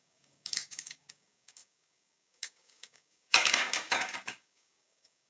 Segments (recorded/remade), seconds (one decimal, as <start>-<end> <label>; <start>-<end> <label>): 0.0-5.3 remade